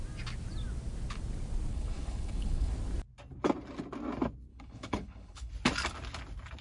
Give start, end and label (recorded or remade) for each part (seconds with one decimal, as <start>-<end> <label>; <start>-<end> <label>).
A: 0.0-1.7 recorded; 1.7-2.7 remade; 2.7-4.5 recorded; 4.5-5.5 remade; 5.5-6.6 recorded